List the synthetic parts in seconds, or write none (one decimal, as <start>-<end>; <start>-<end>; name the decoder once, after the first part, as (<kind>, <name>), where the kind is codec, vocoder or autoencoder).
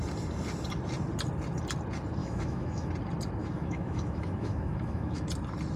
2.2-2.9 (autoencoder, DAC-VAE); 3.4-5.3